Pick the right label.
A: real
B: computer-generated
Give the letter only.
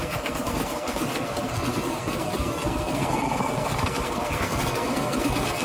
B